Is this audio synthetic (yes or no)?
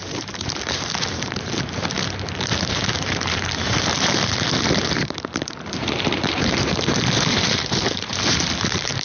yes